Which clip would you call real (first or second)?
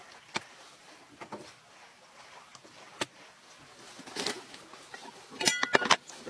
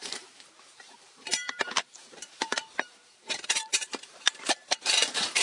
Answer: first